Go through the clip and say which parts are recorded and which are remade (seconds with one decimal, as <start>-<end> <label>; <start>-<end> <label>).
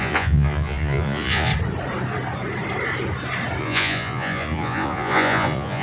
0.0-1.5 remade; 1.5-3.6 recorded; 3.6-5.8 remade